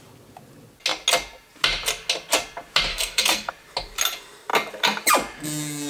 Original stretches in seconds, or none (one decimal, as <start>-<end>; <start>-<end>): 0.0-2.9; 3.5-5.9